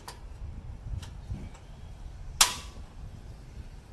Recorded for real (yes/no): yes